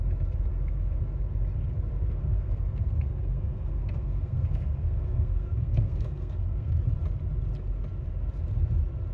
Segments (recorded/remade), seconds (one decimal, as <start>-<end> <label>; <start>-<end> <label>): 0.0-0.5 recorded; 0.5-1.0 remade; 1.0-2.0 recorded; 2.0-6.7 remade; 6.7-9.1 recorded